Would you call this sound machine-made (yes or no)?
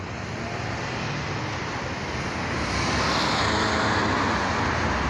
no